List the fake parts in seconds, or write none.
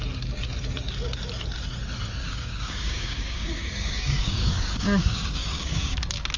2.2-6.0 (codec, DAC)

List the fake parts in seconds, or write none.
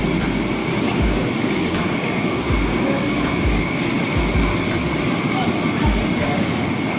0.6-4.0 (codec, DAC); 6.1-7.0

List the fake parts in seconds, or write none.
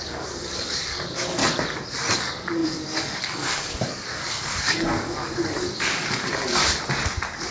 0.0-1.4 (codec, DAC); 2.1-6.6